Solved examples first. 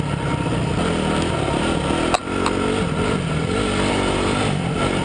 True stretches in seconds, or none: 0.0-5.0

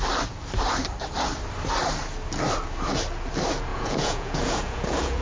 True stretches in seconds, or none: 0.0-3.7